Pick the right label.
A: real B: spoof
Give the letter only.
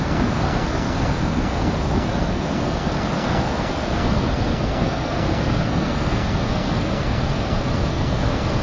B